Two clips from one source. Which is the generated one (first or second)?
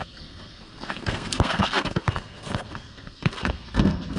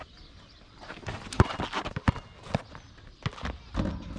first